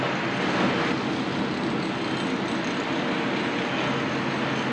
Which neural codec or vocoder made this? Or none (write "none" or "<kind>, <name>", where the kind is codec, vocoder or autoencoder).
none